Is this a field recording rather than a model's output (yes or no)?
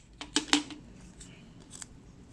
yes